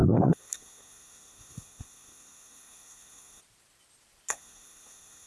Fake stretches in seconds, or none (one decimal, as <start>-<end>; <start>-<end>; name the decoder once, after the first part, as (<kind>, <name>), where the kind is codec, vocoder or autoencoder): 0.0-3.4 (codec, SNAC); 4.3-5.3